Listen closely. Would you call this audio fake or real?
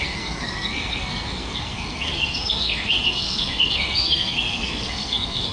fake